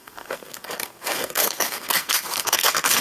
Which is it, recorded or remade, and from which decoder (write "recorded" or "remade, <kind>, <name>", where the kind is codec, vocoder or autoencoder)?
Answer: remade, codec, SNAC